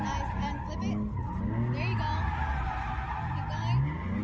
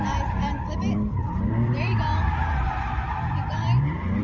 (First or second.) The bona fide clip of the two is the first